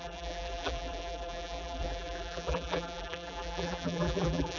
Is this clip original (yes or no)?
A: no